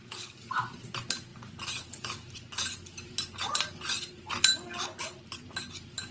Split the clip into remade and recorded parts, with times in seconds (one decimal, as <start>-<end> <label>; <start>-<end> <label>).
0.0-1.3 recorded; 1.3-5.0 remade; 5.0-6.1 recorded